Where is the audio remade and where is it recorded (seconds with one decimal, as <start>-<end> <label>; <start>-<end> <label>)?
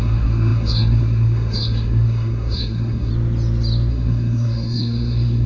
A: 0.0-3.1 remade; 3.1-3.9 recorded; 3.9-5.5 remade